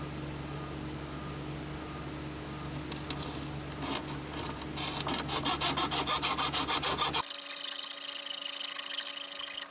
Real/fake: real